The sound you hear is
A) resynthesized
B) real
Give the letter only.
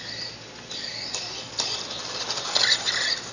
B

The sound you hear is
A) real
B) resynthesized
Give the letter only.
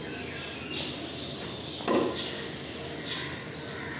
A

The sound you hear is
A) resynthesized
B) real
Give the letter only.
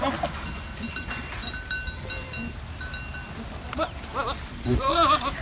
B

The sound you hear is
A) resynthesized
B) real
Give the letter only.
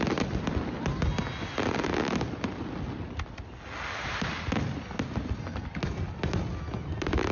B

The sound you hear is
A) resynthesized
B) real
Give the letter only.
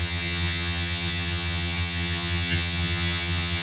A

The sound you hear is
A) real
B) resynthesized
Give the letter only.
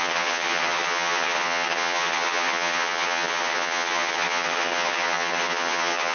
B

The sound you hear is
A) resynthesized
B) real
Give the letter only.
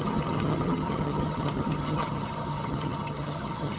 A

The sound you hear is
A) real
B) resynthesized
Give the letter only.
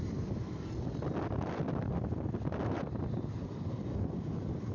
A